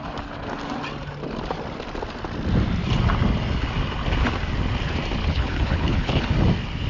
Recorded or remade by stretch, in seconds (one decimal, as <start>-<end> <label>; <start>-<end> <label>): 0.0-5.2 recorded; 5.2-6.2 remade; 6.2-6.9 recorded

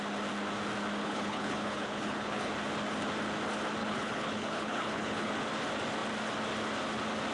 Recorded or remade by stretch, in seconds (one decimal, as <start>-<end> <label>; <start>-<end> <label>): 0.0-1.0 recorded; 1.0-2.5 remade; 2.5-3.8 recorded; 3.8-5.3 remade; 5.3-7.3 recorded

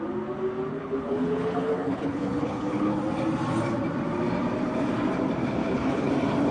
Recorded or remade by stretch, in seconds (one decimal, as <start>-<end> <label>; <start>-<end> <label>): 0.0-0.7 recorded; 0.7-3.0 remade; 3.0-5.6 recorded; 5.6-6.1 remade; 6.1-6.5 recorded

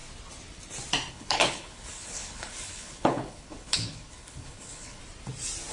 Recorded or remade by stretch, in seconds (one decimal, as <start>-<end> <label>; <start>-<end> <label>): 0.0-1.1 recorded; 1.1-5.0 remade; 5.0-5.7 recorded

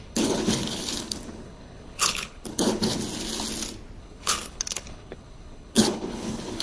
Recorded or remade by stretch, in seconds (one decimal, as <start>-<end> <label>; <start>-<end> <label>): 0.0-3.0 remade; 3.0-4.0 recorded; 4.0-6.6 remade

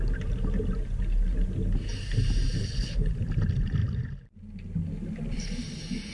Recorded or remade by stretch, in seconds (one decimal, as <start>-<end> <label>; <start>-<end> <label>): 0.0-2.6 recorded; 2.6-3.1 remade; 3.1-6.1 recorded

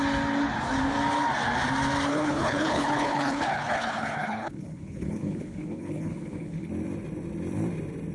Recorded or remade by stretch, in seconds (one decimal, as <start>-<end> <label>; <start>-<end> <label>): 0.0-2.1 recorded; 2.1-6.7 remade; 6.7-8.1 recorded